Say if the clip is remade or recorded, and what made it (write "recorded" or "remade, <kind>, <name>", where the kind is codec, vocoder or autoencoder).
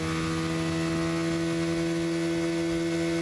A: recorded